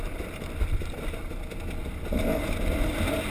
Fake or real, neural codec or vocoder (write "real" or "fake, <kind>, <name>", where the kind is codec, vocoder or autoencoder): real